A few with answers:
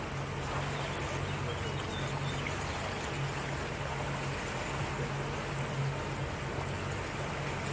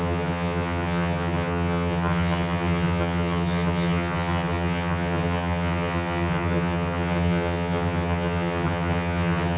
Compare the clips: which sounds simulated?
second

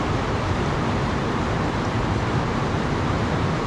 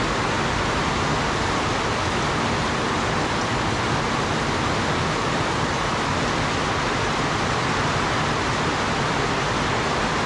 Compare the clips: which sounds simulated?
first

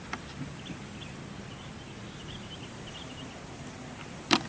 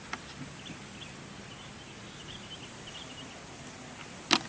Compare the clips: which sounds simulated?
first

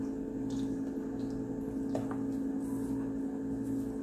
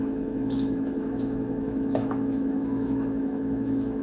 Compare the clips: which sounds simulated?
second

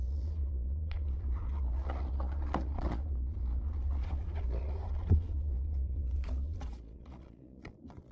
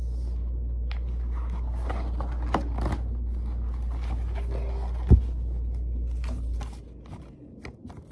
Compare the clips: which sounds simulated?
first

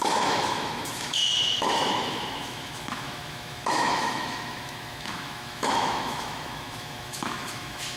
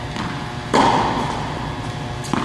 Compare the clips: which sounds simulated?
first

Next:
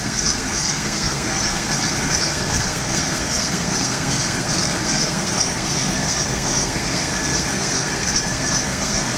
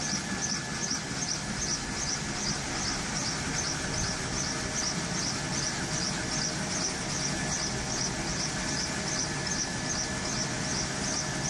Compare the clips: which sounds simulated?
first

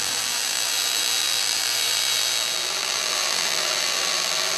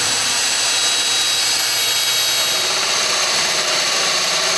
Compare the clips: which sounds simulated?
first